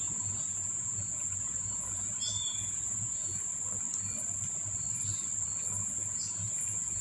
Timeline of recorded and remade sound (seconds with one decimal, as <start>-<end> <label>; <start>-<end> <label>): 0.0-3.5 remade; 3.5-5.8 recorded; 5.8-7.0 remade